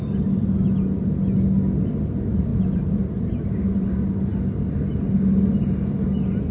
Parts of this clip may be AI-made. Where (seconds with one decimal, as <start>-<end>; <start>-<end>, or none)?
2.5-3.5